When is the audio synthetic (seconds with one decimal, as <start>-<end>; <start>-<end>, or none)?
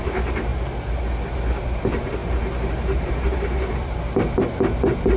0.0-0.5; 1.6-2.2; 3.1-5.2